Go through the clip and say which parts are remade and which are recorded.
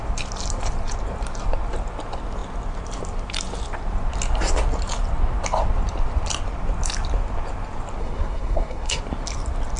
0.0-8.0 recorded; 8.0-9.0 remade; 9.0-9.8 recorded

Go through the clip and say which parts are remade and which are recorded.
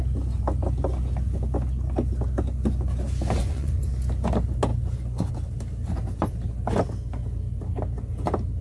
0.0-3.4 recorded; 3.4-3.9 remade; 3.9-4.7 recorded; 4.7-5.3 remade; 5.3-8.6 recorded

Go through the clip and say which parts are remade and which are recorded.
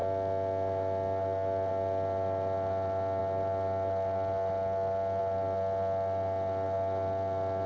0.0-7.7 recorded